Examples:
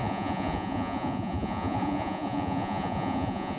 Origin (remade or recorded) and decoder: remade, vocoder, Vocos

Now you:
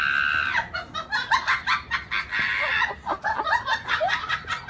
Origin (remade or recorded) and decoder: recorded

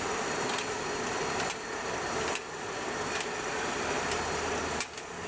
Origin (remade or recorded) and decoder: recorded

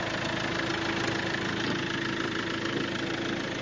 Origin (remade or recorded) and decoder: recorded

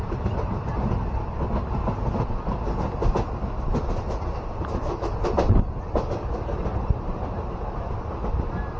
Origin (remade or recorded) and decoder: recorded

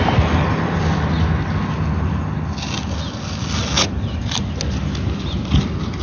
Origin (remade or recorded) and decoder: recorded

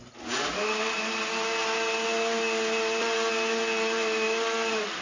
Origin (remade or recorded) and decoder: recorded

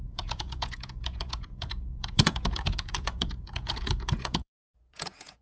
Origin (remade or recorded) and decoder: remade, vocoder, Vocos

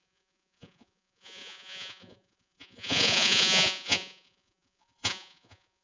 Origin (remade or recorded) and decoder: remade, vocoder, Vocos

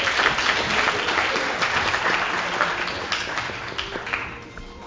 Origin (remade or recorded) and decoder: recorded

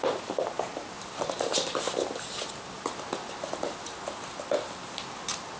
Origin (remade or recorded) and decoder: recorded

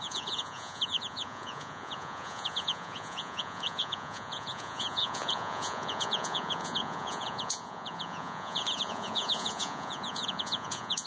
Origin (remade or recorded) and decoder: remade, vocoder, Vocos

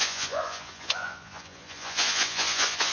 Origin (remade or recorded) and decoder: remade, vocoder, Vocos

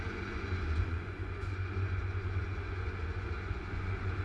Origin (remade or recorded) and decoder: remade, vocoder, Vocos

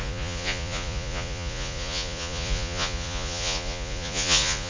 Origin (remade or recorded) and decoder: remade, vocoder, Vocos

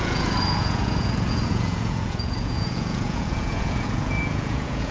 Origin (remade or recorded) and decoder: remade, vocoder, Vocos